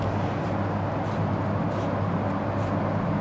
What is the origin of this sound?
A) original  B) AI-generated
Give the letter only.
A